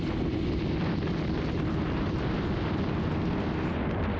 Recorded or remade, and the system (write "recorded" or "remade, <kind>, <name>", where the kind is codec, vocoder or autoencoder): recorded